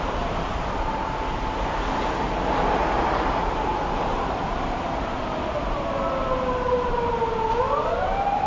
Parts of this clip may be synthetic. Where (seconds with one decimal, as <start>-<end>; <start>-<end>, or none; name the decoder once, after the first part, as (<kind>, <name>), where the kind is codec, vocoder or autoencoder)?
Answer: 6.7-7.6 (vocoder, BigVGAN v2)